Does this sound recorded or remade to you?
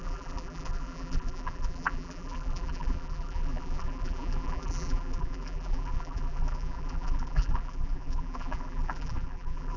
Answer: remade